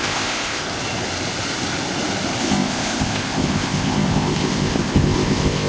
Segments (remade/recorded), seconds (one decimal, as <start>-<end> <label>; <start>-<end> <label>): 0.0-0.6 remade; 0.6-2.4 recorded; 2.4-5.7 remade